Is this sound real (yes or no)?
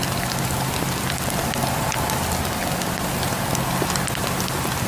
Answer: yes